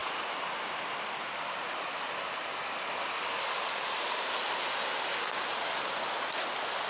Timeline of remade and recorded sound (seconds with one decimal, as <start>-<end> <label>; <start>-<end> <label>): 0.0-6.9 recorded